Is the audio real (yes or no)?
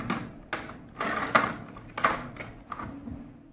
yes